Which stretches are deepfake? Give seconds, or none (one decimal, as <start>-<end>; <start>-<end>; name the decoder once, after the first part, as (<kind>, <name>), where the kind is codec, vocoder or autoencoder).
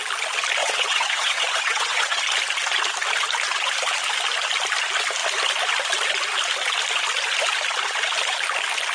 0.6-2.2 (vocoder, WaveNeXt)